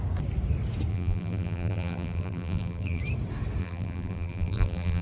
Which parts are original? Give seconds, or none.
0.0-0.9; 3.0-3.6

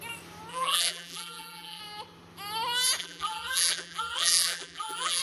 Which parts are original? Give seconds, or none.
0.0-0.5; 1.8-3.0

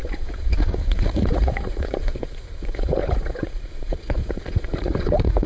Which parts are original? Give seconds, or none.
none

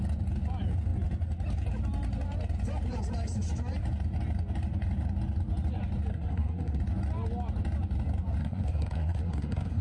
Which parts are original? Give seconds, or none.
0.0-6.1; 6.8-8.4

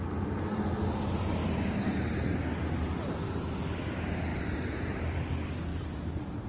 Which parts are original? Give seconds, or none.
0.0-1.4; 3.6-4.3; 5.3-5.7